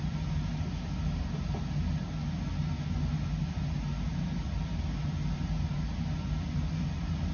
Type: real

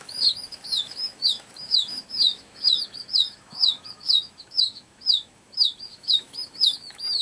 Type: fake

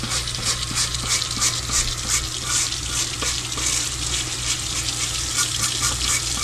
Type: real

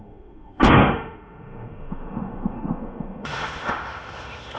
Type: fake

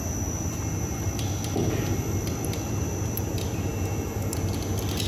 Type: real